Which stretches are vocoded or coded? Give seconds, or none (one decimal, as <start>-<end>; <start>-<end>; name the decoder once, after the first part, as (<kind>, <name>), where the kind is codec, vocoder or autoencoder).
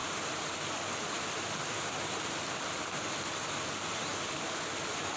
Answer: none